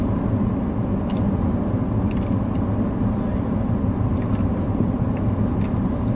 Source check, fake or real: real